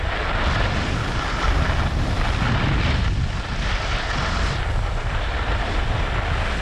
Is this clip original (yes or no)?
yes